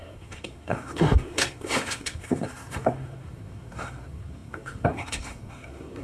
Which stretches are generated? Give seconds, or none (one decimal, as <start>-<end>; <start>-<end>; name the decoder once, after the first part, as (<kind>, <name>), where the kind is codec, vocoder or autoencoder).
0.0-6.0 (codec, SNAC)